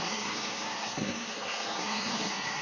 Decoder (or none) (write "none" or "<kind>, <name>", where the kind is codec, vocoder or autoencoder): codec, SNAC